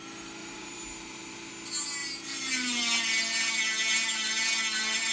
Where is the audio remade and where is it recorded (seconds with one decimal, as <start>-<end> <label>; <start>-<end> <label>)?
0.0-0.4 recorded; 0.4-1.5 remade; 1.5-2.0 recorded; 2.0-2.8 remade; 2.8-5.1 recorded